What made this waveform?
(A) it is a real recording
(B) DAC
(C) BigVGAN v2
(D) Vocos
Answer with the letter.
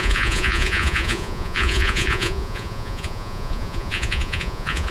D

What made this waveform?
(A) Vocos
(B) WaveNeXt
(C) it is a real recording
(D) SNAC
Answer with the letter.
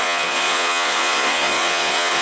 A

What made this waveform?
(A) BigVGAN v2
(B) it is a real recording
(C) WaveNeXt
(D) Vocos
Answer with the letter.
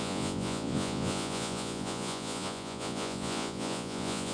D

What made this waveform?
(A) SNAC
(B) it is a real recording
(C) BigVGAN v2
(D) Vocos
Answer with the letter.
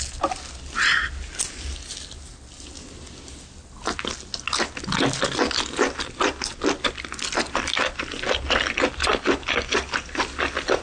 B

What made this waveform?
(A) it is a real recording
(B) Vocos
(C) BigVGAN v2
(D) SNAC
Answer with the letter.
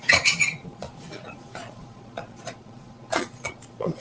B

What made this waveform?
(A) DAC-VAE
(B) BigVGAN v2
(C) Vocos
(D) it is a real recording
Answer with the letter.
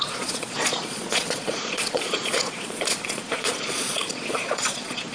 C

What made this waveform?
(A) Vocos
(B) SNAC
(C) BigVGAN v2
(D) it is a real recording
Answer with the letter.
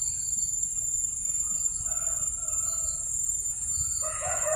A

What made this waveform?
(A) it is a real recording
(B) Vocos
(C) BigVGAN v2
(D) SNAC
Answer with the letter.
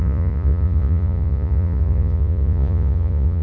B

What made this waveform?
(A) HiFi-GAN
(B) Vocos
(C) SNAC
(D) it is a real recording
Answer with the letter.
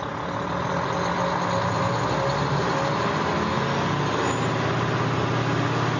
D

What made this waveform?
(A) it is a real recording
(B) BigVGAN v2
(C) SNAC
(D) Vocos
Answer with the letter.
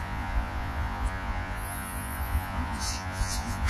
D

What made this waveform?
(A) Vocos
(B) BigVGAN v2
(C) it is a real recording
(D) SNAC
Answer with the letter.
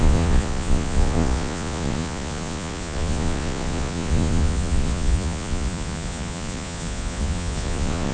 A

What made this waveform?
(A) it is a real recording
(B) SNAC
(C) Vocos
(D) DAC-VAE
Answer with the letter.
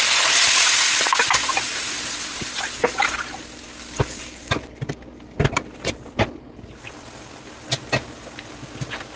A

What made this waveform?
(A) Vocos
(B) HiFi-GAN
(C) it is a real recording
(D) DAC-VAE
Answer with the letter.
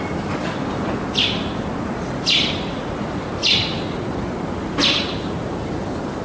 C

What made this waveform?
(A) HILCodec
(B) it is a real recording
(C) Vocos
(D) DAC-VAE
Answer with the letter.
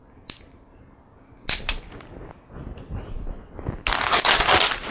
B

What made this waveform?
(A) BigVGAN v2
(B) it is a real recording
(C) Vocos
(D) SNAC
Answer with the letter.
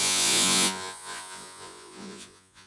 C